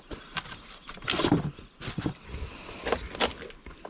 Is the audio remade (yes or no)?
no